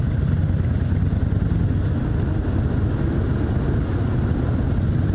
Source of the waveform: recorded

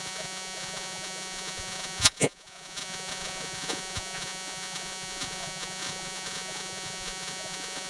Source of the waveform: remade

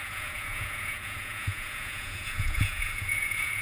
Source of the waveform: remade